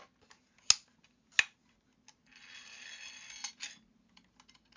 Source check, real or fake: real